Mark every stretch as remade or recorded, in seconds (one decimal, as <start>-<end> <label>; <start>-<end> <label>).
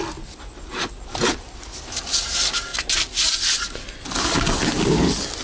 0.0-5.4 recorded